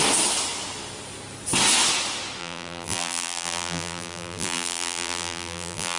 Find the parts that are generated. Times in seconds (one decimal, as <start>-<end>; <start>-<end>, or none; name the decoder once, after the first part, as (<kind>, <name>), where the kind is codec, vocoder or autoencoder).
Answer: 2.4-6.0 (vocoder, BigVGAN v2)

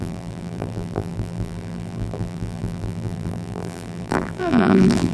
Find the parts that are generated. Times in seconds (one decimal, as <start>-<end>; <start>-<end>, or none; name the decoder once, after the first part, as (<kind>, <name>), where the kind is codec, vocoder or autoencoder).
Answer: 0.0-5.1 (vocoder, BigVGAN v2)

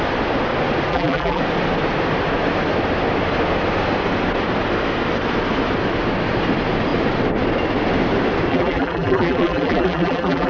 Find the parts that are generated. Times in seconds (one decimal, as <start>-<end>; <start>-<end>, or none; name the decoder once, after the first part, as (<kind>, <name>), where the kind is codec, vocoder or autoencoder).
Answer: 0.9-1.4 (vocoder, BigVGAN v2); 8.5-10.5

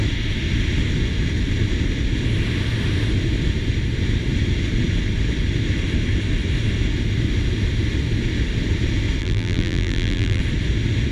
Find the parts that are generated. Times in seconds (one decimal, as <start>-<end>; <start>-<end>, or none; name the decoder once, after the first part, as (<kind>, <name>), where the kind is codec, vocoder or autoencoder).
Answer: 9.2-10.4 (vocoder, BigVGAN v2)

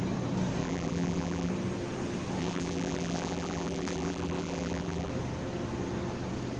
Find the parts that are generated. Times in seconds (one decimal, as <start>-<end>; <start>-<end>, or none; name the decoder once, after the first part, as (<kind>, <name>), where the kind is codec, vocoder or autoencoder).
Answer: 0.6-1.5 (vocoder, BigVGAN v2); 2.4-5.1

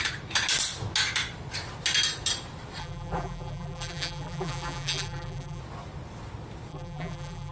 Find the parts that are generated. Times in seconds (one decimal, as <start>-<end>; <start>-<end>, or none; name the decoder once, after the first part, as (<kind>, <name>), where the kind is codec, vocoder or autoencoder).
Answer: 2.8-5.6 (vocoder, BigVGAN v2); 6.7-7.5